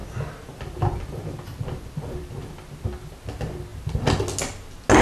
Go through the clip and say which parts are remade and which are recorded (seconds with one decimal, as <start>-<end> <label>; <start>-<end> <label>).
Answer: 0.0-2.7 remade; 2.7-5.0 recorded